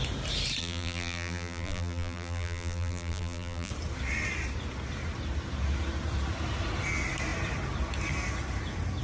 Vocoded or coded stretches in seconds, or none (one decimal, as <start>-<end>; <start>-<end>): 0.6-3.7